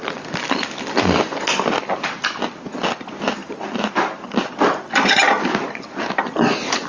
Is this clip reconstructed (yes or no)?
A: no